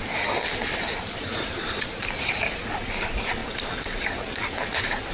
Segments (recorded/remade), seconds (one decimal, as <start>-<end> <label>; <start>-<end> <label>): 0.0-1.3 recorded; 1.3-2.0 remade; 2.0-5.1 recorded

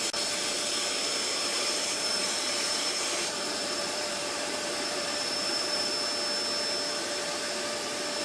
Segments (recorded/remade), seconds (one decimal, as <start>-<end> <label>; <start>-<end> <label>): 0.0-1.5 recorded; 1.5-5.9 remade; 5.9-7.0 recorded; 7.0-7.5 remade; 7.5-8.2 recorded

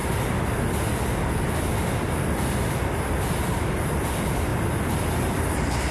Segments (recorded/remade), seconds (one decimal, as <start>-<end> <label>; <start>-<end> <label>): 0.0-1.3 recorded; 1.3-5.9 remade

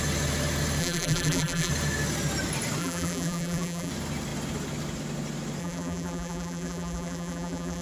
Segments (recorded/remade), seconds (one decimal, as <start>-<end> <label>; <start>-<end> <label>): 0.0-0.8 recorded; 0.8-1.7 remade; 1.7-2.8 recorded; 2.8-3.9 remade; 3.9-5.6 recorded; 5.6-7.8 remade

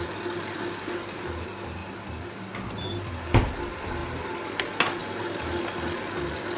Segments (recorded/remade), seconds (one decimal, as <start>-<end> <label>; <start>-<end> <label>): 0.0-1.8 recorded; 1.8-2.3 remade; 2.3-5.0 recorded; 5.0-5.6 remade; 5.6-6.6 recorded

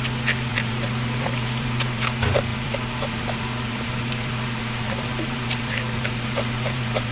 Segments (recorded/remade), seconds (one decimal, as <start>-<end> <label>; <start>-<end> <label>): 0.0-0.5 recorded; 0.5-2.1 remade; 2.1-2.5 recorded; 2.5-7.1 remade